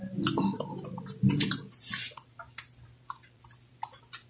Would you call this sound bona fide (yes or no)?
yes